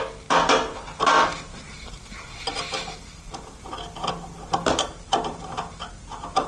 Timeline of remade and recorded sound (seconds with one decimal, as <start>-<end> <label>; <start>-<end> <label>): 0.0-6.5 recorded